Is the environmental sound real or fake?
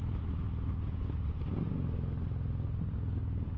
real